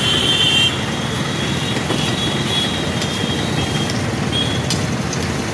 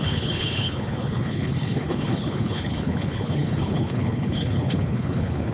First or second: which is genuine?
first